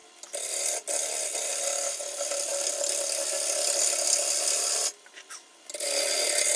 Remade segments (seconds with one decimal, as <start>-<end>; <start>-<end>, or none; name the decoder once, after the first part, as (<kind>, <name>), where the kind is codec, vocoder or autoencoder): none